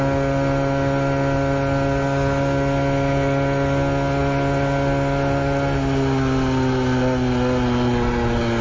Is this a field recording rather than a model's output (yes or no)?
yes